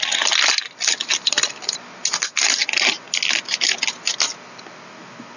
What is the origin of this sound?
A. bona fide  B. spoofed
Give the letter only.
A